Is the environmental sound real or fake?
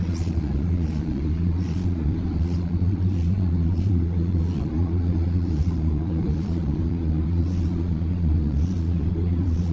fake